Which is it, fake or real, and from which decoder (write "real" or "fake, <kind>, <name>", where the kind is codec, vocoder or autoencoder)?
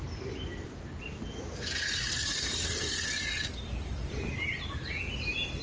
real